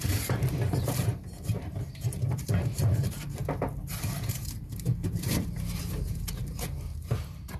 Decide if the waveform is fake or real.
fake